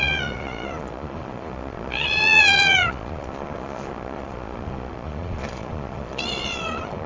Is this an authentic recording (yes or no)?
no